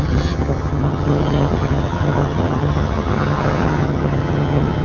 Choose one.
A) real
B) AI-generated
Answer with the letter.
B